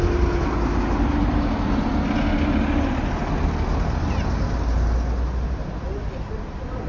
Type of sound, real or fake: real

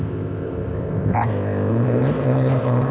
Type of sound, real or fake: fake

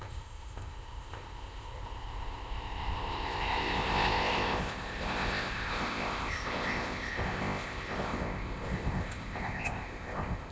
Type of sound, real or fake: fake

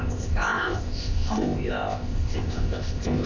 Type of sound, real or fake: fake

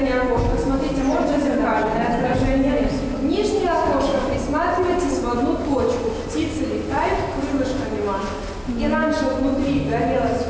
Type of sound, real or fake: real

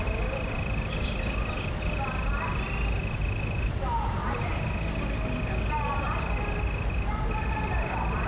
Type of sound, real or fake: real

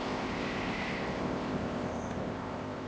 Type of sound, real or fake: fake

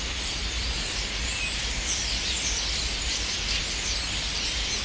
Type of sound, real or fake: real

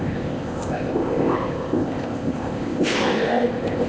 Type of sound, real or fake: fake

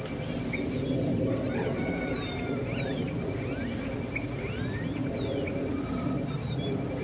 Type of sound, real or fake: real